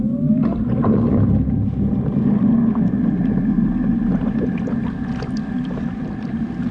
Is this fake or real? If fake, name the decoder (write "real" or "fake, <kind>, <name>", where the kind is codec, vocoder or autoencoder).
real